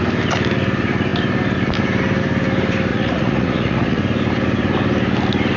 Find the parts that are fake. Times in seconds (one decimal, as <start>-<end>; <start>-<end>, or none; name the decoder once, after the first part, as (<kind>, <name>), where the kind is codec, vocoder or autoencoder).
2.9-4.0 (vocoder, Vocos)